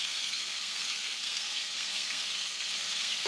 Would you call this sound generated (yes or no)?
yes